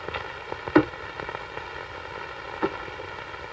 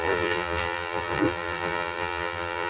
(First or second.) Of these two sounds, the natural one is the first